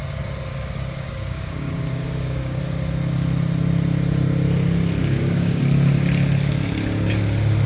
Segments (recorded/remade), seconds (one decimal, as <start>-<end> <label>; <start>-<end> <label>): 0.0-0.5 recorded; 0.5-2.6 remade; 2.6-5.0 recorded; 5.0-5.6 remade; 5.6-7.7 recorded